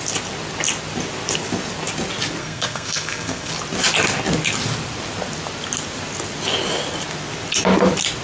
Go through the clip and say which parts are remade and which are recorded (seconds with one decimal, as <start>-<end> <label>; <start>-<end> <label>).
0.0-2.4 recorded; 2.4-3.5 remade; 3.5-8.2 recorded